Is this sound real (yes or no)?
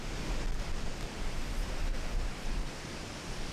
yes